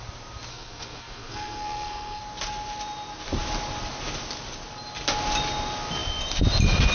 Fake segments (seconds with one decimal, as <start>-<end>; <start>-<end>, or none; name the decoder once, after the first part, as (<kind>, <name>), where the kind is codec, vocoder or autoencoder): 0.5-2.2 (codec, SNAC)